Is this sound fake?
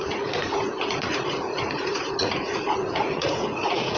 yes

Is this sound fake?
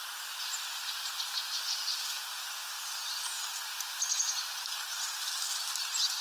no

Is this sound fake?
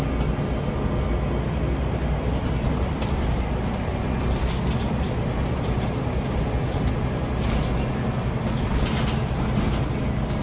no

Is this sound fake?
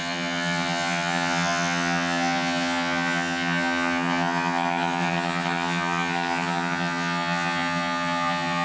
yes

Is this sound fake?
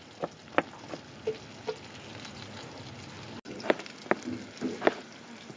no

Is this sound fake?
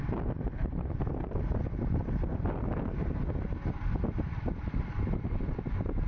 no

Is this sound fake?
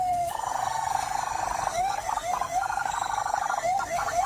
yes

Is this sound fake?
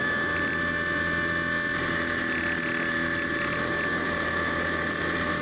no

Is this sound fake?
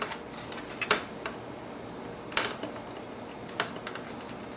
no